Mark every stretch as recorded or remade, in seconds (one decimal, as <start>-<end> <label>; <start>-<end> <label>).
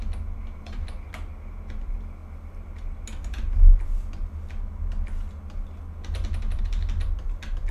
0.0-0.4 recorded; 0.4-1.1 remade; 1.1-7.7 recorded